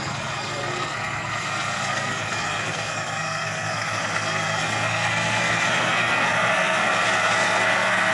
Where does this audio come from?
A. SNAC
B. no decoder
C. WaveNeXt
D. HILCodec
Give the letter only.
A